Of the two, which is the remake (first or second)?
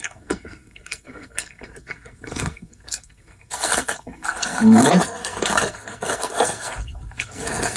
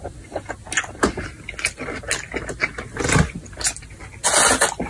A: first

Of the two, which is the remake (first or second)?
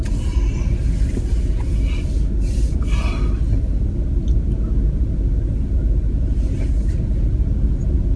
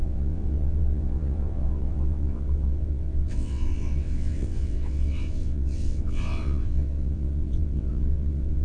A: second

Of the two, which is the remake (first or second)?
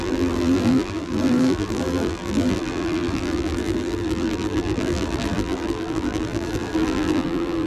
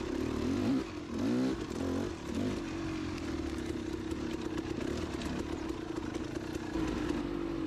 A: first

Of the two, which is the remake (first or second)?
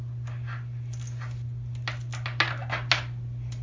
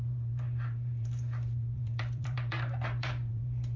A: second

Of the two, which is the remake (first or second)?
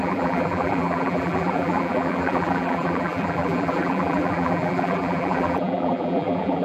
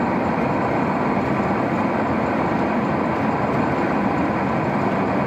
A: first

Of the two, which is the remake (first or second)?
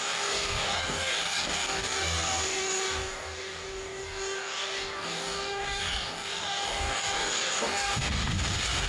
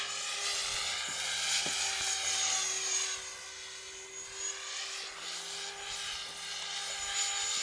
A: first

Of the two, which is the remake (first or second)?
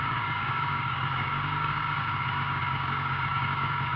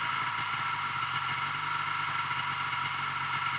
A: first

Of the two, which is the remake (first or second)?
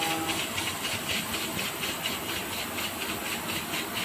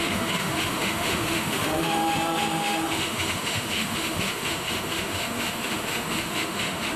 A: second